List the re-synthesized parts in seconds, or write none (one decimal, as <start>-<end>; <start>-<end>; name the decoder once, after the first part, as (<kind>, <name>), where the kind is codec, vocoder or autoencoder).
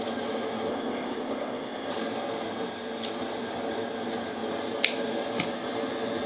0.7-1.9 (codec, ZipCodec)